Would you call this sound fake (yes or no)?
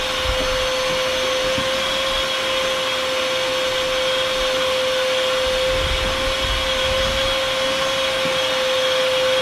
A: no